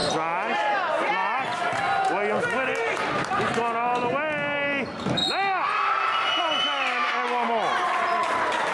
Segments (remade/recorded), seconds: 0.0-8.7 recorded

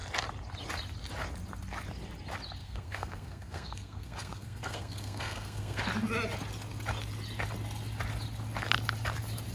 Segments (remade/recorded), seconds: 0.0-2.6 recorded; 2.6-5.8 remade; 5.8-9.5 recorded

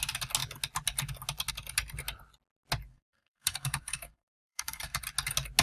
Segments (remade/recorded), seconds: 0.0-2.9 recorded; 2.9-5.0 remade; 5.0-5.6 recorded

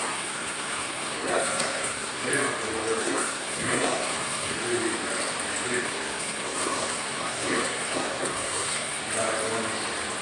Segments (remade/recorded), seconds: 0.0-2.3 remade; 2.3-3.0 recorded; 3.0-4.6 remade; 4.6-5.8 recorded; 5.8-9.0 remade; 9.0-10.2 recorded

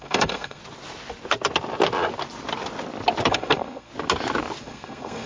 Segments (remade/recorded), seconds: 0.0-0.6 remade; 0.6-3.3 recorded; 3.3-3.9 remade; 3.9-4.6 recorded; 4.6-5.3 remade